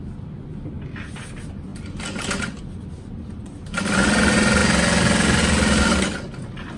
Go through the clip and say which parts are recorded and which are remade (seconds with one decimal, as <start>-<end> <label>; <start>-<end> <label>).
0.0-6.8 recorded